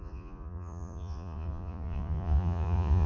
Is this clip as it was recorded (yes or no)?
no